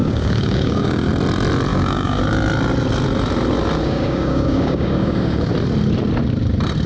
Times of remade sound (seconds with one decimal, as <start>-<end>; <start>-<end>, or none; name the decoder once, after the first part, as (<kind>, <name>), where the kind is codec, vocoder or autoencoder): 0.0-1.1 (codec, DAC); 1.7-2.2; 3.8-5.5